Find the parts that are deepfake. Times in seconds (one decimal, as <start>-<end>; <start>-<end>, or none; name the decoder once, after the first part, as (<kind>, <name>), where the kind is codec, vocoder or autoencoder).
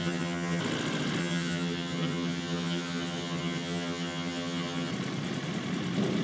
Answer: 0.0-0.6 (vocoder, HiFi-GAN); 1.2-4.9